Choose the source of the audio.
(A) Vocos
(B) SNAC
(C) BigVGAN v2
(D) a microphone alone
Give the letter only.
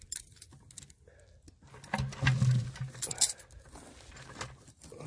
D